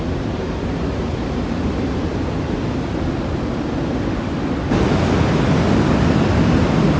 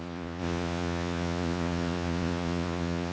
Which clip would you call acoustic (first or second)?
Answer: first